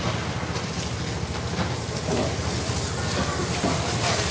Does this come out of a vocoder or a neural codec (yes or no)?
no